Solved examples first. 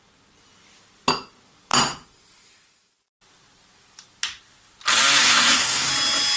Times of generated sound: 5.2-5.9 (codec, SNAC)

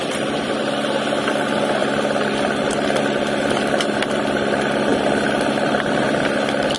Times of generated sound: none